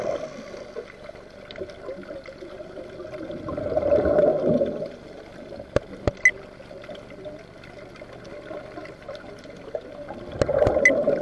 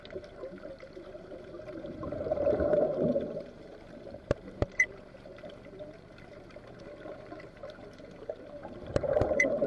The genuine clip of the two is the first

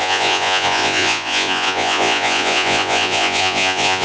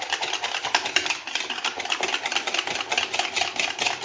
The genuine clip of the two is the second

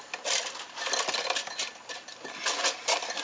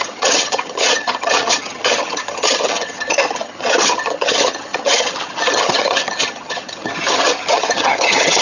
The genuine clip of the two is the first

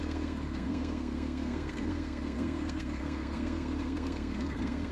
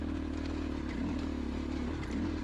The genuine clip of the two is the second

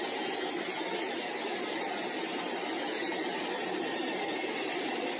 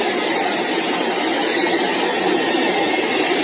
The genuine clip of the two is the second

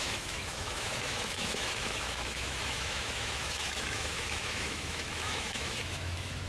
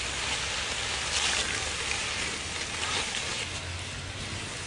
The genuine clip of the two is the second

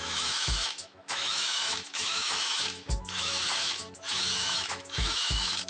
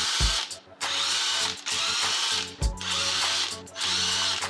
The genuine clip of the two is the second